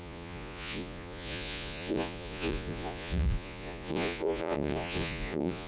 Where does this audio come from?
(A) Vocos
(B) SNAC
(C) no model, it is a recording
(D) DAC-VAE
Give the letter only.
A